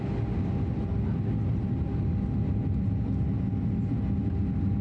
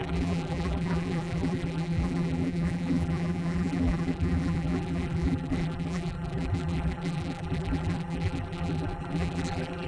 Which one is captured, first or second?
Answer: first